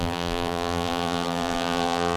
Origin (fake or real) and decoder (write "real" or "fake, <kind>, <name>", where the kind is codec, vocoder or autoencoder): fake, vocoder, BigVGAN v2